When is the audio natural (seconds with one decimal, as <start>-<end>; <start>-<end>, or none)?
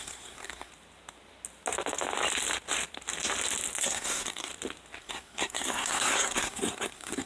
0.7-3.8; 4.5-5.0